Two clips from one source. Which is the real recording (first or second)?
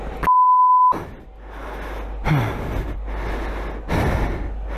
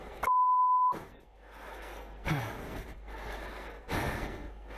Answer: first